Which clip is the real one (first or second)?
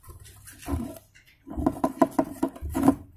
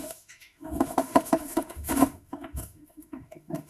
first